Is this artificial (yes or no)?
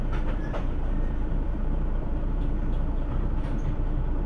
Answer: yes